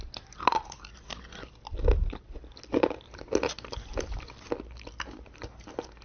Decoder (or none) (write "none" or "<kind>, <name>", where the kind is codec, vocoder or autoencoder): none